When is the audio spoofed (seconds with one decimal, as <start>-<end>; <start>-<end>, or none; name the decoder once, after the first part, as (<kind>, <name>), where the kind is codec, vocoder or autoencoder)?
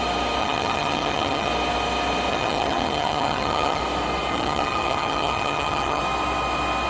0.4-1.5 (vocoder, HiFi-GAN); 2.3-3.8; 4.3-6.0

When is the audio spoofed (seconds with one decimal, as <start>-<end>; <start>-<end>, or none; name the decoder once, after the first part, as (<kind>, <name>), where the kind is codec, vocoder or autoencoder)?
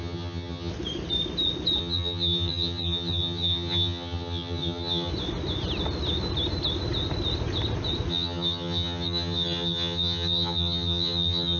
0.0-0.7 (vocoder, HiFi-GAN); 1.8-5.1; 8.1-11.6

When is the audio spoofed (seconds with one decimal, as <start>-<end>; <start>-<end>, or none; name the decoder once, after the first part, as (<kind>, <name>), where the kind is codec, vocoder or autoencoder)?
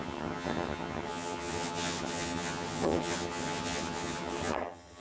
0.0-5.0 (vocoder, HiFi-GAN)